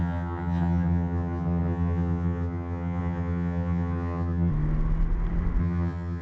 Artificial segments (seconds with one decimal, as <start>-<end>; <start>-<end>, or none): 0.0-4.5; 5.6-6.2